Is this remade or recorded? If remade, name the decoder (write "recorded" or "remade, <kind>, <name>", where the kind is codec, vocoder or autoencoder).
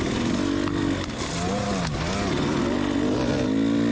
recorded